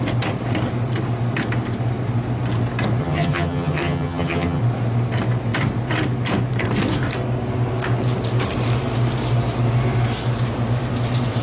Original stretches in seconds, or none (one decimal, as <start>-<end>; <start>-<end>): 0.0-3.0; 4.6-11.4